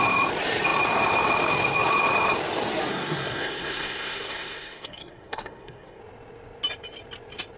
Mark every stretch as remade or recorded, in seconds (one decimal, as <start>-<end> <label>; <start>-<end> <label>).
0.0-2.9 recorded; 2.9-6.0 remade; 6.0-7.6 recorded

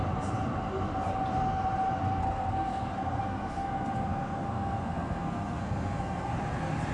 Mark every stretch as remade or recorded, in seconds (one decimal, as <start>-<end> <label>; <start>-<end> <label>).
0.0-2.2 recorded; 2.2-6.3 remade; 6.3-6.9 recorded

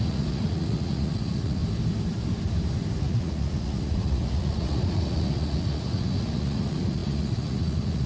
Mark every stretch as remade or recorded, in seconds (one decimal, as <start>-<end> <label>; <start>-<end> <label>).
0.0-1.6 remade; 1.6-3.0 recorded; 3.0-8.1 remade

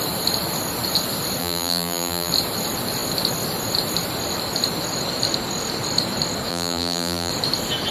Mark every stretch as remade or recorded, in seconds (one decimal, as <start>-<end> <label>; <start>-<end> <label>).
0.0-1.4 recorded; 1.4-2.3 remade; 2.3-6.5 recorded; 6.5-7.3 remade; 7.3-7.9 recorded

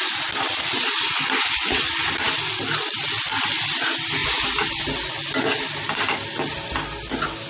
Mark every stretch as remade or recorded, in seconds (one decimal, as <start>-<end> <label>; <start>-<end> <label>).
0.0-7.5 recorded